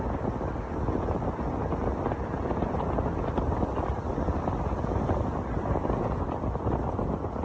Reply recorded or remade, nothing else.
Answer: recorded